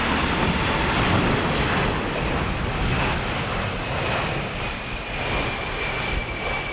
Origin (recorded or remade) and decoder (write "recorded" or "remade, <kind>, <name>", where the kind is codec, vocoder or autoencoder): recorded